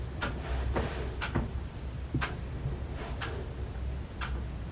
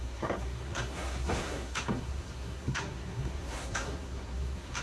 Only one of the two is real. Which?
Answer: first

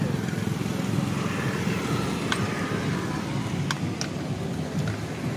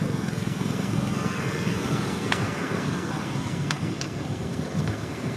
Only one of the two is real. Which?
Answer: first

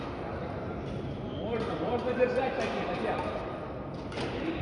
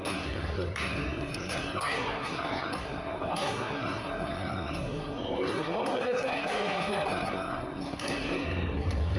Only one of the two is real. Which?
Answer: first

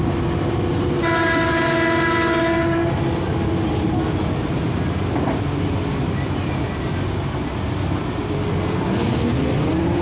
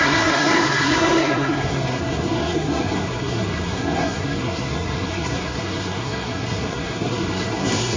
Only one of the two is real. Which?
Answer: first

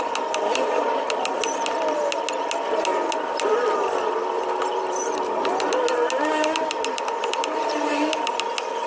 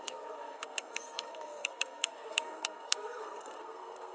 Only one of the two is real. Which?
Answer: first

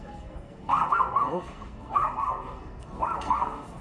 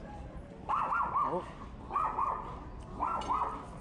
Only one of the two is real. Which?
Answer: second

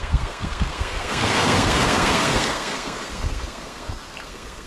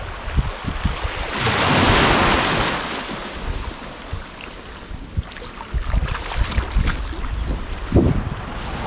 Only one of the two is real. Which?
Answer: second